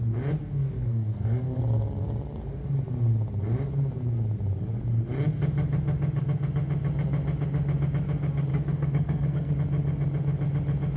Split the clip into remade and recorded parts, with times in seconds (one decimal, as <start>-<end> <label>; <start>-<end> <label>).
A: 0.0-0.4 recorded; 0.4-1.6 remade; 1.6-8.5 recorded; 8.5-9.5 remade; 9.5-11.0 recorded